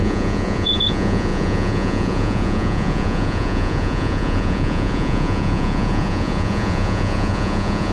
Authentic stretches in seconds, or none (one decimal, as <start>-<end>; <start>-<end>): none